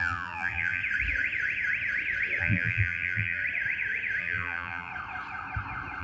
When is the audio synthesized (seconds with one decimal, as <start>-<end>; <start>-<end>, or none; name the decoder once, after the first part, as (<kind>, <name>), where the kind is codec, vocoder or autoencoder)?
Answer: 0.0-0.8 (vocoder, BigVGAN v2); 2.4-3.4; 4.2-4.9